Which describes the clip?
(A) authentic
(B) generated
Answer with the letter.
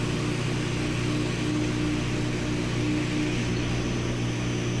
A